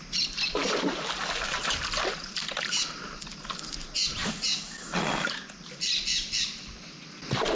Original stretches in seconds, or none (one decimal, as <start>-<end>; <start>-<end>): 0.0-7.5